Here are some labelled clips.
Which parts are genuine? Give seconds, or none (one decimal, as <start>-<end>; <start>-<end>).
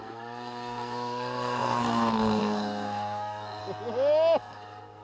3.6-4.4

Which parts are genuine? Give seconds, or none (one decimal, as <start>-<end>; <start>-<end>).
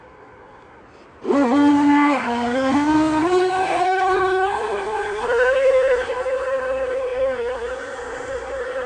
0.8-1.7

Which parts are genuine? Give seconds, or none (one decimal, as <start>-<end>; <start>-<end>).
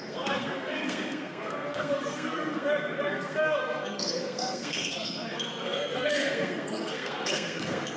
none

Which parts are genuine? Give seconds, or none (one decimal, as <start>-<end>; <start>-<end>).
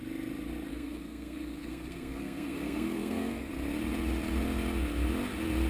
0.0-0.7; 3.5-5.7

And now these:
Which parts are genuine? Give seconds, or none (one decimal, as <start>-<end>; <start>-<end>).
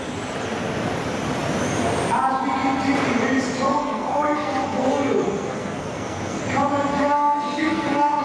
0.0-3.7; 6.4-6.9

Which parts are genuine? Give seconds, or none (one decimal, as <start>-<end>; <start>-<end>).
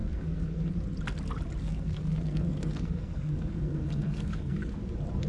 0.7-1.6; 4.8-5.3